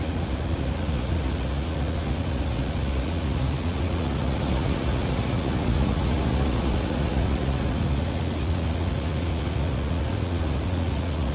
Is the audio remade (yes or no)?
yes